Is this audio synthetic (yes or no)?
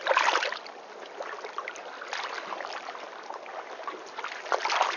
no